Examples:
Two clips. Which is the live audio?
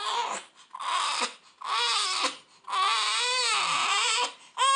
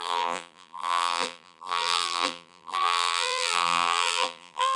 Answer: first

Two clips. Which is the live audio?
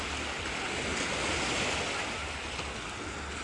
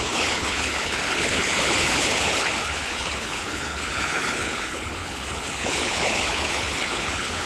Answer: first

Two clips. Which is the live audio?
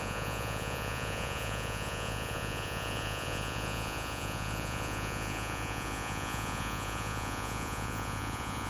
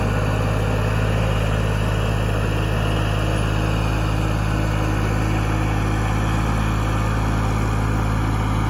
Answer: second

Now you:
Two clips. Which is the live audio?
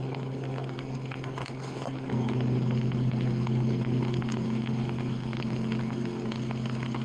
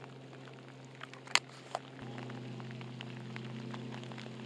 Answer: second